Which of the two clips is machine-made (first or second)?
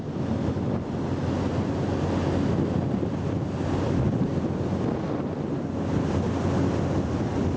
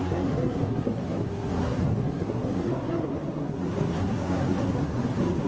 second